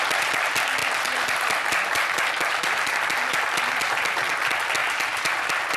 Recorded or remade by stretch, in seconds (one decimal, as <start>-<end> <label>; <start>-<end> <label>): 0.0-5.8 recorded